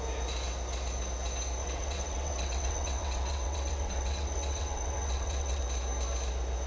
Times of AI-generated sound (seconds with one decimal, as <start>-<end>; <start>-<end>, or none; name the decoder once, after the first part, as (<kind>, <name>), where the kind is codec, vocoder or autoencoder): 1.6-5.6 (vocoder, WaveNeXt)

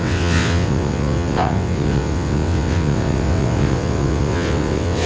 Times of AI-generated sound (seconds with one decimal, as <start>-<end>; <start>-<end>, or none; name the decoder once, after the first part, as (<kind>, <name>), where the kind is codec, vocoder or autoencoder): 0.0-5.1 (vocoder, WaveNeXt)

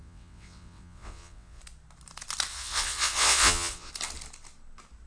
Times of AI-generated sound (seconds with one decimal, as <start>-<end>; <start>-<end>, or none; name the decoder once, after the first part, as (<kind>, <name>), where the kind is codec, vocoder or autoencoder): 0.0-1.6 (vocoder, WaveNeXt); 2.5-3.9

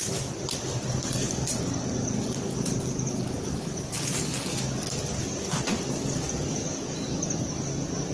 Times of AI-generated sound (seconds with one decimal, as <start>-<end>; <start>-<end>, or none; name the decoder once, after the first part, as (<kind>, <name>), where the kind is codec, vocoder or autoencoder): none

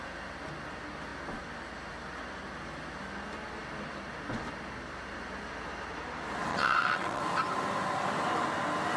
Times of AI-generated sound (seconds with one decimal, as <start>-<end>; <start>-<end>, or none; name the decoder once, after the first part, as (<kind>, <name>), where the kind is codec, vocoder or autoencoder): 6.5-7.2 (vocoder, WaveNeXt)

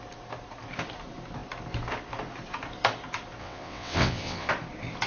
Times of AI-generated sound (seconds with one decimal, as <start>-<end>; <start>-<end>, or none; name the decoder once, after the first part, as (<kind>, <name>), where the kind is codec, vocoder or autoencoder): 3.4-4.5 (vocoder, WaveNeXt)

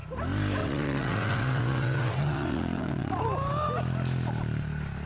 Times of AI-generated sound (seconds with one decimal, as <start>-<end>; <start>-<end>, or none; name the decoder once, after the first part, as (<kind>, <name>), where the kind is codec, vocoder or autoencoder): 0.6-3.2 (vocoder, WaveNeXt)